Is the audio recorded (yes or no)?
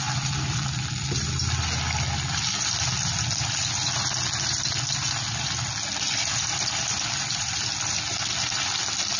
yes